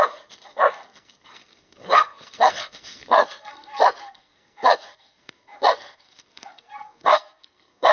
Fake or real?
fake